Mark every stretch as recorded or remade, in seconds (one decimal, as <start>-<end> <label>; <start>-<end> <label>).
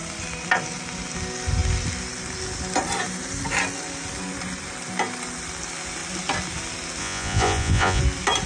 0.0-7.0 recorded; 7.0-8.0 remade; 8.0-8.5 recorded